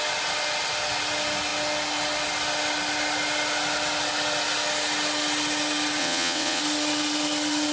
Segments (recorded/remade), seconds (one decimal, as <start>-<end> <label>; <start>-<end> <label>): 0.0-6.0 recorded; 6.0-6.6 remade; 6.6-7.7 recorded